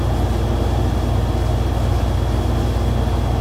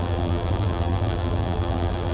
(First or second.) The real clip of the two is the first